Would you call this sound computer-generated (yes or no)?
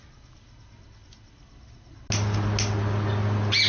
no